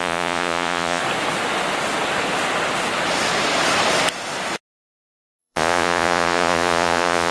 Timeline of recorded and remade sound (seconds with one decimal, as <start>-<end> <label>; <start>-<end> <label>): 0.0-1.0 remade; 1.0-5.4 recorded; 5.4-7.3 remade